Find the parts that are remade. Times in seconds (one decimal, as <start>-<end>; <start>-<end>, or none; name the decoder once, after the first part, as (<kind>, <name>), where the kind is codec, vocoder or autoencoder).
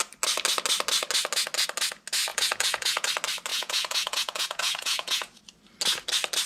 2.3-3.1 (vocoder, Vocos); 3.5-5.4